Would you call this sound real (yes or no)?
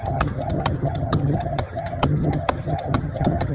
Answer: no